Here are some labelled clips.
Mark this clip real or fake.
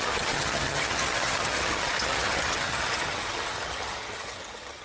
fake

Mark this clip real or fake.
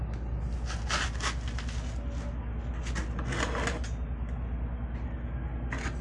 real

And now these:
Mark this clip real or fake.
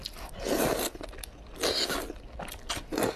real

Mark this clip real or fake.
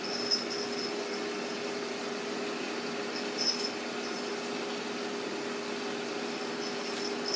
real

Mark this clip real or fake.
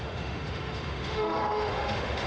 fake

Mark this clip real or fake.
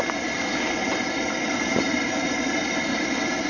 fake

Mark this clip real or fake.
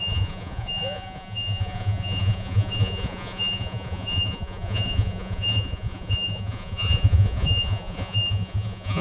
fake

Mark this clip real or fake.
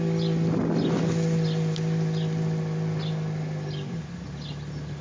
real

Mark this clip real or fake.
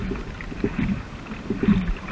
real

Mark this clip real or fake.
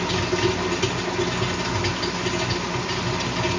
real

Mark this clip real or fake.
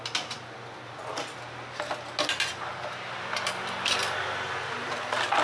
real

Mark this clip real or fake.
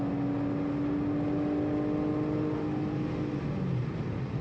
real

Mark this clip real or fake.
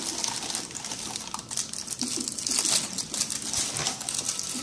real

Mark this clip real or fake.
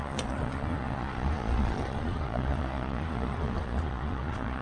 fake